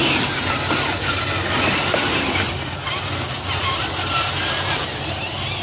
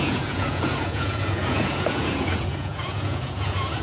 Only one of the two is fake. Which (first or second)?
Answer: second